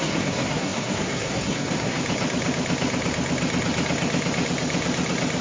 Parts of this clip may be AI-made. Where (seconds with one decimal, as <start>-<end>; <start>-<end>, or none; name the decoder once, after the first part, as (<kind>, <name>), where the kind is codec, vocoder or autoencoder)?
0.0-2.0 (codec, SNAC)